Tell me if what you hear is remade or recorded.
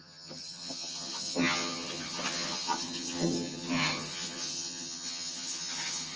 remade